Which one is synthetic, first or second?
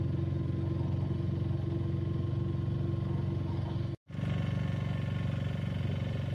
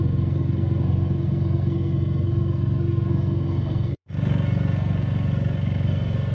second